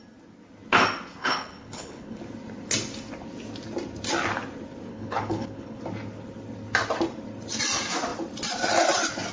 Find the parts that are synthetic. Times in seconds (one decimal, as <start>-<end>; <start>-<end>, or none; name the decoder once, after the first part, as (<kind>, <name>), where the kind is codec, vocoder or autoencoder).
1.2-2.2 (codec, HILCodec); 4.9-5.8